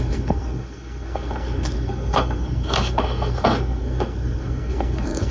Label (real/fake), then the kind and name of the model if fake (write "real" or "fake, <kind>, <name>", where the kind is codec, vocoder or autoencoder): fake, codec, SNAC